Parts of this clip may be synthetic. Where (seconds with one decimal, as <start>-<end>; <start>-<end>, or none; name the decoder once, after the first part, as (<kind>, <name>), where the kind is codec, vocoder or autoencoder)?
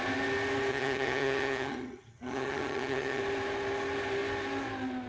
0.7-3.2 (vocoder, HiFi-GAN)